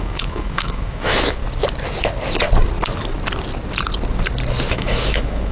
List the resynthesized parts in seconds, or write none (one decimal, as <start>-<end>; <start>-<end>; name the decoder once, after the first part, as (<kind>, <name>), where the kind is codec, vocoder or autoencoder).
0.0-1.4 (autoencoder, DAC-VAE); 4.7-5.5